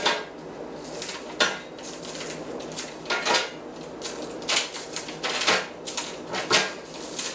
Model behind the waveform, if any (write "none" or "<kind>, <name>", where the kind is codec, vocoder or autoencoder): none